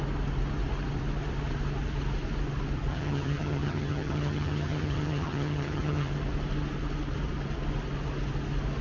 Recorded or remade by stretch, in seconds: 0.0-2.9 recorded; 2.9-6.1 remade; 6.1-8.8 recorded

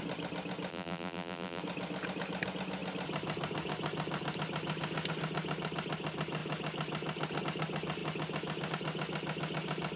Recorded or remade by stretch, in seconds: 0.0-0.7 recorded; 0.7-1.6 remade; 1.6-10.0 recorded

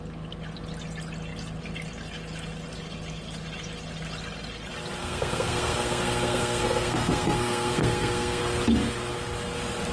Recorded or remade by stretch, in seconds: 0.0-5.0 recorded; 5.0-8.4 remade; 8.4-9.9 recorded

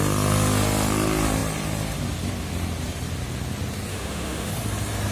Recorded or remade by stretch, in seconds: 0.0-3.9 recorded; 3.9-4.5 remade; 4.5-5.1 recorded

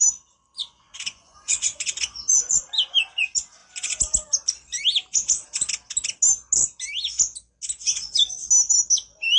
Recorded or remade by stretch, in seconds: 0.0-0.6 recorded; 0.6-2.6 remade; 2.6-9.4 recorded

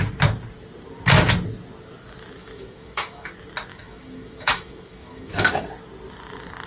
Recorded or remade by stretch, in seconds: 0.0-2.4 recorded; 2.4-3.3 remade; 3.3-3.7 recorded; 3.7-5.5 remade; 5.5-6.7 recorded

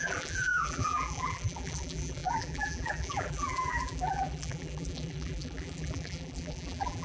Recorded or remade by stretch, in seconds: 0.0-7.0 remade